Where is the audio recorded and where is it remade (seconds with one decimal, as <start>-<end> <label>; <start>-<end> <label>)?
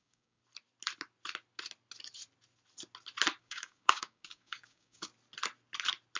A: 0.0-0.4 remade; 0.4-3.4 recorded; 3.4-5.1 remade; 5.1-6.2 recorded